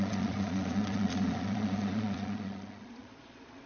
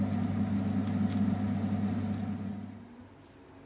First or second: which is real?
second